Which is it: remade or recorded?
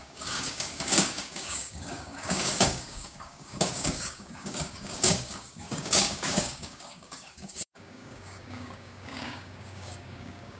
remade